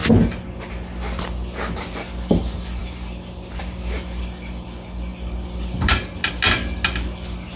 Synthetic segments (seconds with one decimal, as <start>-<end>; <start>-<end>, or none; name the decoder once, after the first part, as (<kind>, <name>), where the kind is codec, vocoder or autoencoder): none